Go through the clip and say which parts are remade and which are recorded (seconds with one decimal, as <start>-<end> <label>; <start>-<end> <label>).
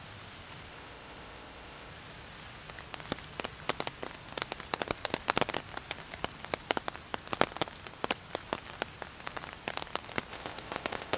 0.0-0.7 recorded; 0.7-1.9 remade; 1.9-10.3 recorded; 10.3-11.2 remade